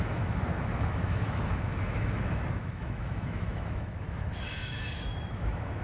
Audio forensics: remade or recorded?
remade